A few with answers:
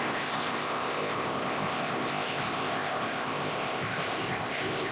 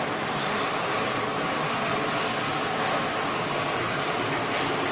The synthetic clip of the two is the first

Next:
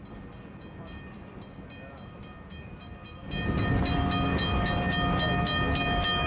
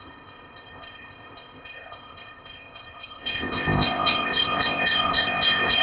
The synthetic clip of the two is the second